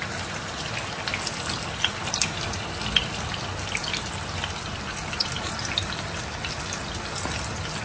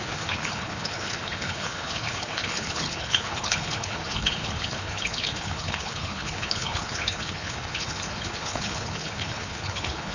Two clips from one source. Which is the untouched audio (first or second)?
first